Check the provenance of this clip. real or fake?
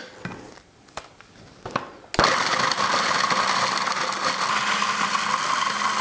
real